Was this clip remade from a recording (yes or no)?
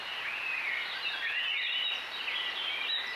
no